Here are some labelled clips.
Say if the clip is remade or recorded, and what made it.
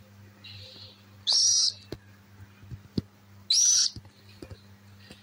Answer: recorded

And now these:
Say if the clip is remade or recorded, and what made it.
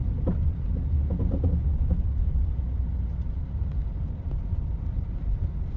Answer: recorded